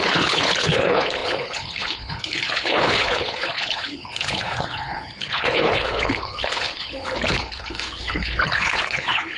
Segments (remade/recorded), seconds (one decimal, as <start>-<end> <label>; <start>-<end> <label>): 0.0-9.4 remade

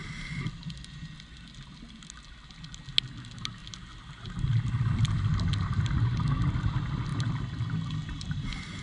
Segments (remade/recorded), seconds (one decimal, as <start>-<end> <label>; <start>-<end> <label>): 0.0-8.8 recorded

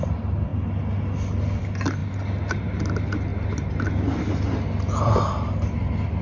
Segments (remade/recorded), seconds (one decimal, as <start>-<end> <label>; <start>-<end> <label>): 0.0-6.2 recorded

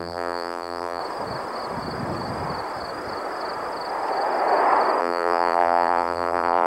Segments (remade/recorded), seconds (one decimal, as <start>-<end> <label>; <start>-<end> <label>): 0.0-1.0 remade; 1.0-5.0 recorded; 5.0-6.7 remade

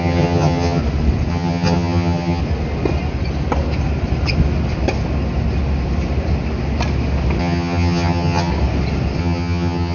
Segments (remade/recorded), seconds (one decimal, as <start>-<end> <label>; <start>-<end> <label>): 0.0-0.8 remade; 0.8-1.3 recorded; 1.3-2.4 remade; 2.4-7.4 recorded; 7.4-8.5 remade; 8.5-9.2 recorded; 9.2-9.9 remade

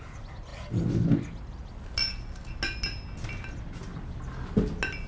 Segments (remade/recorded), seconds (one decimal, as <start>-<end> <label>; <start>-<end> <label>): 0.0-5.1 recorded

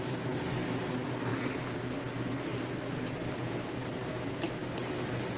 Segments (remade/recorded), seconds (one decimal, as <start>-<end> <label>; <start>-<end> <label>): 0.0-5.4 recorded